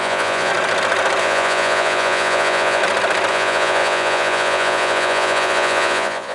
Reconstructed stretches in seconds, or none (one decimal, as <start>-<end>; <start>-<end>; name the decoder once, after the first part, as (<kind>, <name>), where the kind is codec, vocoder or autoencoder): 0.0-0.5 (vocoder, Vocos); 1.2-2.8; 3.3-6.3